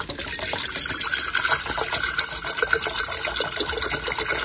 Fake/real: real